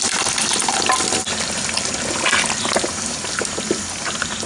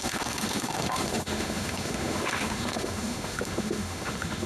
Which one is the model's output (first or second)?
second